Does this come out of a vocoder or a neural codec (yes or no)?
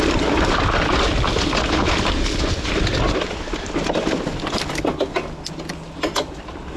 no